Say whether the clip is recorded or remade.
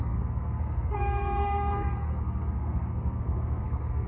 remade